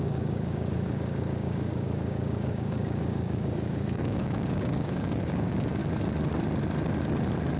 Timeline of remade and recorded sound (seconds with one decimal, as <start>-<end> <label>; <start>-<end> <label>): 0.0-5.8 remade; 5.8-7.6 recorded